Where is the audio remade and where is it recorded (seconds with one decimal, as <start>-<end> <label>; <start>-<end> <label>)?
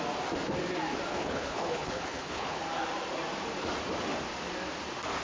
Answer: 0.0-1.1 recorded; 1.1-2.6 remade; 2.6-5.2 recorded